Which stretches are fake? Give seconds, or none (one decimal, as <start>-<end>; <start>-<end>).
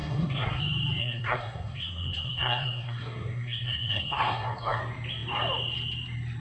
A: 0.0-0.6; 1.0-4.8